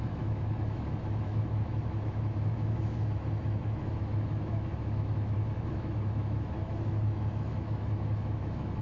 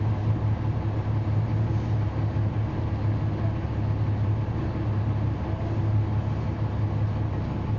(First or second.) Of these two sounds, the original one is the second